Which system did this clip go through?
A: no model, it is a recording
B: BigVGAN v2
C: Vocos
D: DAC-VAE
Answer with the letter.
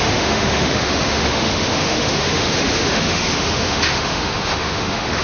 D